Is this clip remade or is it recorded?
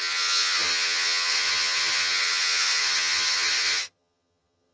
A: remade